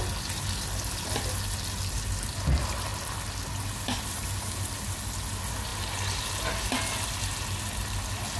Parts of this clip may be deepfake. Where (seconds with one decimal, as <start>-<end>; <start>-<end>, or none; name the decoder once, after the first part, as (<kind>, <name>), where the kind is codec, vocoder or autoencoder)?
none